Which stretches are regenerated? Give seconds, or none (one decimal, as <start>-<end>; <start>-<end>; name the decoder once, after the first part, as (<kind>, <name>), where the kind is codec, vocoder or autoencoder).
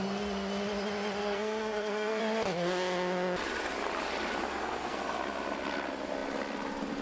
1.2-2.2 (codec, SNAC); 4.5-5.2